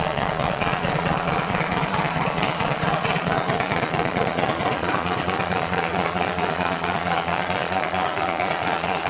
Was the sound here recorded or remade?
remade